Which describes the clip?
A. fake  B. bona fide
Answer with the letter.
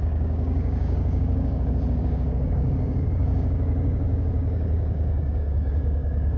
A